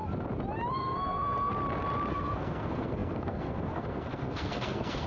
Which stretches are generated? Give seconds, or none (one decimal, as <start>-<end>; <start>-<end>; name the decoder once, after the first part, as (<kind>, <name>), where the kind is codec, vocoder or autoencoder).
0.7-1.5 (codec, SNAC); 2.1-5.1